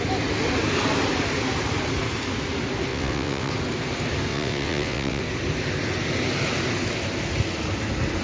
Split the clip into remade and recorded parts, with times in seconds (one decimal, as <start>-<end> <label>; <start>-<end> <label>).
0.0-2.9 recorded; 2.9-3.5 remade; 3.5-4.3 recorded; 4.3-5.2 remade; 5.2-8.2 recorded